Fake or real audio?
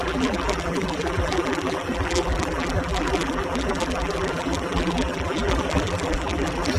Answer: fake